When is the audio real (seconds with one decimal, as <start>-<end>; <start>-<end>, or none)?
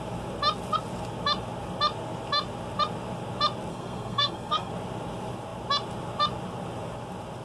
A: 0.0-3.7; 4.7-7.4